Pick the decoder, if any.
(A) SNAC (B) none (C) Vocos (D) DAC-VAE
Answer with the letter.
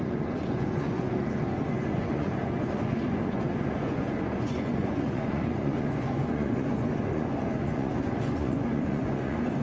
C